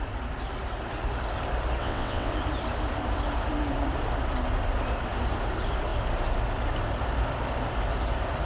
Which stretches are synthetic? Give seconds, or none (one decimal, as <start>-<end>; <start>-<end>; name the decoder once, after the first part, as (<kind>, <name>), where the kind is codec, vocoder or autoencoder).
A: 1.8-2.3 (vocoder, WaveNeXt)